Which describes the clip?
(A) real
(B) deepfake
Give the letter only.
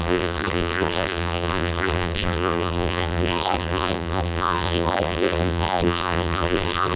B